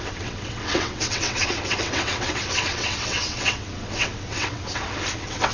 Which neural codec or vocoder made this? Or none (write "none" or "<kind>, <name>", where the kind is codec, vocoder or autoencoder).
vocoder, WaveNeXt